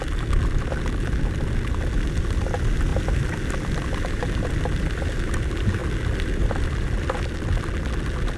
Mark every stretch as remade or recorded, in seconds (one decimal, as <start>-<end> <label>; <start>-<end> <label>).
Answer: 0.0-8.4 recorded